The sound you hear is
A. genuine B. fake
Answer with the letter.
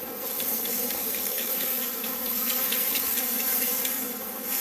B